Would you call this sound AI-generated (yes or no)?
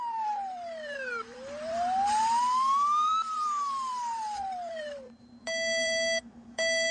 yes